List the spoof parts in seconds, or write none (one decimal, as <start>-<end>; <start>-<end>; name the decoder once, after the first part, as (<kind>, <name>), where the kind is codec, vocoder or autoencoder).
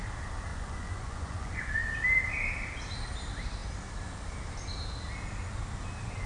0.5-1.7 (vocoder, Vocos)